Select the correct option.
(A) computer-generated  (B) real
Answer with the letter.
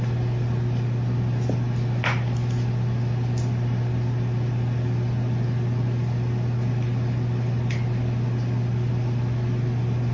B